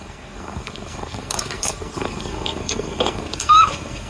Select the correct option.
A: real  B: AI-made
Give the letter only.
B